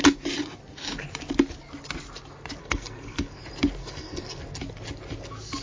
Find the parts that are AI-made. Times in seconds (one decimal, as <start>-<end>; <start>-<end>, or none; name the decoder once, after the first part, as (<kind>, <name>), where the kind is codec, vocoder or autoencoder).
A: 2.6-3.4 (codec, SNAC); 3.8-4.4